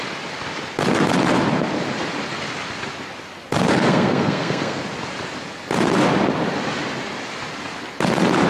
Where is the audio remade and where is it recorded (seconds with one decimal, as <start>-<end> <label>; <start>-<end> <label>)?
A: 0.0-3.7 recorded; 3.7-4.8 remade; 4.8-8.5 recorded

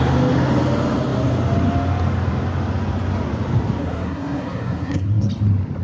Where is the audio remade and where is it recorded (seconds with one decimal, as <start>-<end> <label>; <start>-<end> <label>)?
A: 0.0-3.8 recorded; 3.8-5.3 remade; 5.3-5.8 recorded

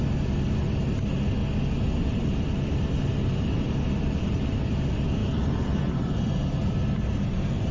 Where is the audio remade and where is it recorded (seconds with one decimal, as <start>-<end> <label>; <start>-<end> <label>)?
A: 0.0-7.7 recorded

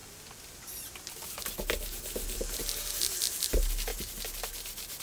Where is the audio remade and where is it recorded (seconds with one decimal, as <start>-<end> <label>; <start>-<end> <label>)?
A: 0.0-5.0 recorded

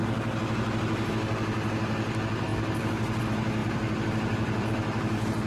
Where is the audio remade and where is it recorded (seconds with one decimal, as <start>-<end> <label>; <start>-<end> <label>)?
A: 0.0-2.5 recorded; 2.5-3.2 remade; 3.2-3.6 recorded; 3.6-4.7 remade; 4.7-5.5 recorded

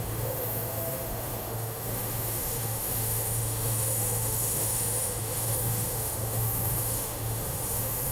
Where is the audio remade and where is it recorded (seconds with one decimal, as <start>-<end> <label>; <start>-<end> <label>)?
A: 0.0-8.1 remade

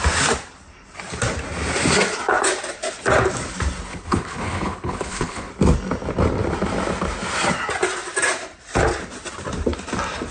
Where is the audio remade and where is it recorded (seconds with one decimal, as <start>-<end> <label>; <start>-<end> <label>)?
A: 0.0-3.9 recorded; 3.9-5.5 remade; 5.5-10.3 recorded

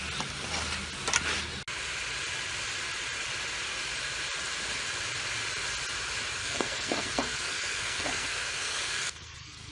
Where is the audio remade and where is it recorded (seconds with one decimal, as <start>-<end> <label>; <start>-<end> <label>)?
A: 0.0-6.4 recorded; 6.4-9.7 remade